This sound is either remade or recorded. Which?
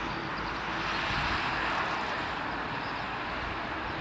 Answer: recorded